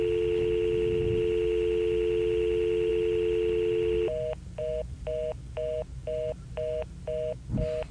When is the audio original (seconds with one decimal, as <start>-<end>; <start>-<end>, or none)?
0.0-7.9